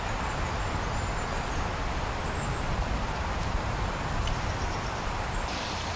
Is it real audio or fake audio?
real